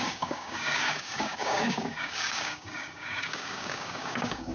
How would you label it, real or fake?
fake